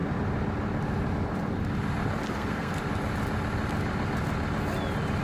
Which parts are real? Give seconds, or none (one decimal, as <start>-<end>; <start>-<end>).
0.0-2.3; 2.8-5.2